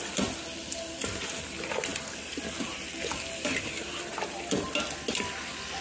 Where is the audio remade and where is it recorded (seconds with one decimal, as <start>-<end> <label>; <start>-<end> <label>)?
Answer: 0.0-5.8 recorded